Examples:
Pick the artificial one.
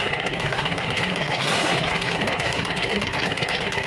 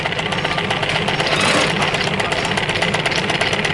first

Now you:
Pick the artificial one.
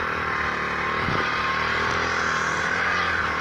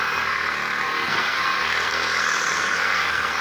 second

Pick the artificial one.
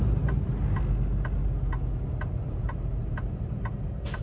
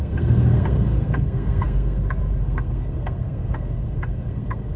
second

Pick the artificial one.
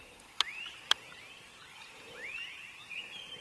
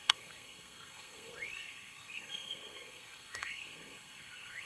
second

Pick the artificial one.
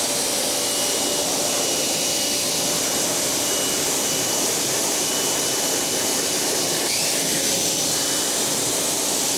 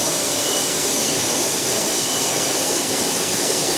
second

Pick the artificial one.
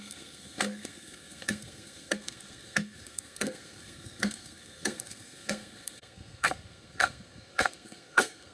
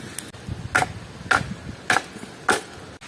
first